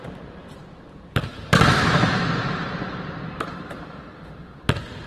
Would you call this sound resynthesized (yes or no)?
yes